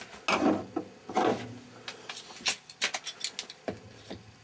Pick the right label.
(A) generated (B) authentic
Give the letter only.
B